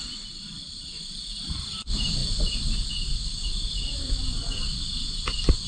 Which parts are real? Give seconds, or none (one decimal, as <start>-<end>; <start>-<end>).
0.0-5.7